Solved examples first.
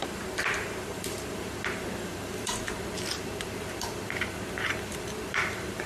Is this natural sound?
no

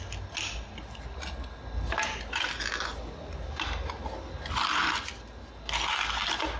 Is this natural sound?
yes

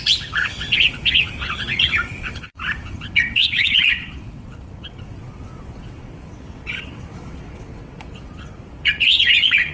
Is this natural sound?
no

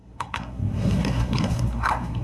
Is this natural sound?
no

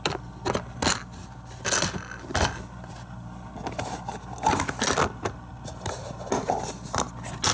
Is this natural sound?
yes